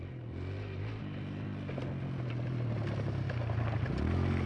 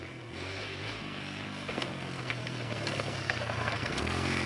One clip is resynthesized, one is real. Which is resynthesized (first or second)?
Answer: second